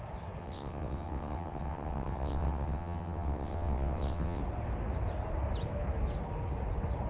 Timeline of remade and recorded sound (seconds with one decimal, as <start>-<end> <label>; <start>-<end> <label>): 0.0-0.4 recorded; 0.4-4.4 remade; 4.4-7.1 recorded